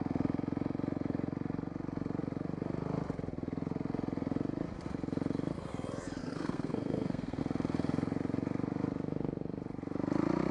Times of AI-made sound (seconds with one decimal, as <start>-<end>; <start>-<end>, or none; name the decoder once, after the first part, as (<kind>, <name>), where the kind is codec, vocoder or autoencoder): 6.2-7.4 (codec, SNAC)